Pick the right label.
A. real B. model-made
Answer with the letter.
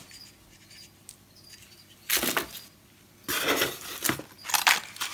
A